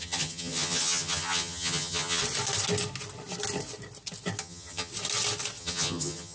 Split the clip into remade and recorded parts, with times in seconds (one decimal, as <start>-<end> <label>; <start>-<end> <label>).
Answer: 0.0-2.2 remade; 2.2-4.4 recorded; 4.4-4.9 remade; 4.9-5.6 recorded; 5.6-6.3 remade